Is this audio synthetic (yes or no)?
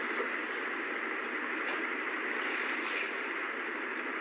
no